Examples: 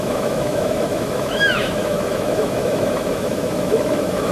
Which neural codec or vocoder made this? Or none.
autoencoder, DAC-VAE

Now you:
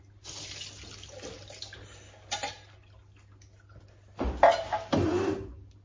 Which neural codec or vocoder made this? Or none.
none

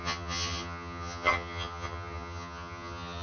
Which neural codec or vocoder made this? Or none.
vocoder, HiFi-GAN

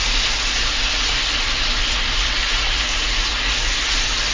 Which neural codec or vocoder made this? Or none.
none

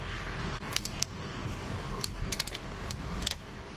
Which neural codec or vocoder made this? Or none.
codec, DAC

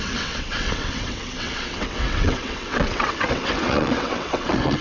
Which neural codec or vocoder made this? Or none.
vocoder, WaveNeXt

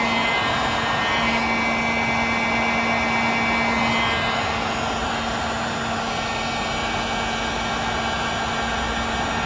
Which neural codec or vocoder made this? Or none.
none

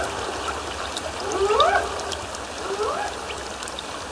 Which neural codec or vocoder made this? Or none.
none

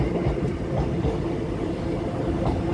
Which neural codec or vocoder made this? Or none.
none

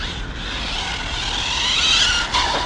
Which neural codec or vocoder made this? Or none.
none